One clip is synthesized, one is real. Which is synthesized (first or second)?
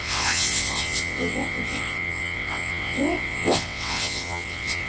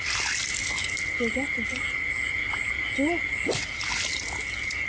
first